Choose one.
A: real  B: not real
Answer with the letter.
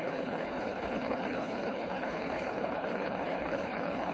B